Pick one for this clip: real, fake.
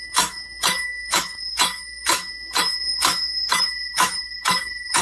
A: fake